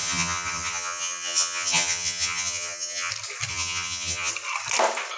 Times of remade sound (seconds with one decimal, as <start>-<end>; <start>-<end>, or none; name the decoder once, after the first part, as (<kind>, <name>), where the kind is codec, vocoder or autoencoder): 0.0-3.1 (vocoder, HiFi-GAN); 3.5-4.3